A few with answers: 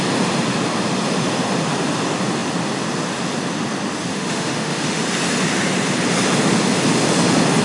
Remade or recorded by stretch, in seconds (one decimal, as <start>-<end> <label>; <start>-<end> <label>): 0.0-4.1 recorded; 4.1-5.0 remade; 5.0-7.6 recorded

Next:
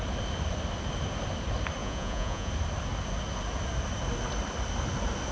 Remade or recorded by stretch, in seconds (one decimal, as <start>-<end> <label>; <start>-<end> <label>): 0.0-1.8 recorded; 1.8-2.5 remade; 2.5-5.3 recorded

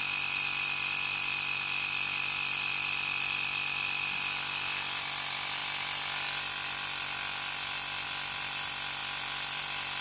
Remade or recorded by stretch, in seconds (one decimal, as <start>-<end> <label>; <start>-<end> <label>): 0.0-10.0 recorded